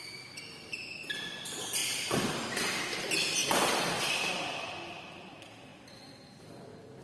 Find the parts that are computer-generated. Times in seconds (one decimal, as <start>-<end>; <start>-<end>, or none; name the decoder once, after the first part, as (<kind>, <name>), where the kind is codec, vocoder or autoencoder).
3.4-4.3 (vocoder, BigVGAN v2)